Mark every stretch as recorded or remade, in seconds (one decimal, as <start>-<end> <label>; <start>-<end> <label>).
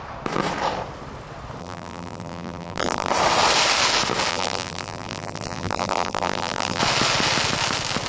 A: 0.0-1.6 recorded; 1.6-3.1 remade; 3.1-4.3 recorded; 4.3-6.8 remade; 6.8-8.1 recorded